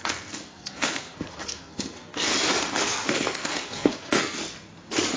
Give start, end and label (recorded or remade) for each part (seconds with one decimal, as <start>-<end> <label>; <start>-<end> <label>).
0.0-2.3 remade; 2.3-2.8 recorded; 2.8-4.4 remade; 4.4-5.2 recorded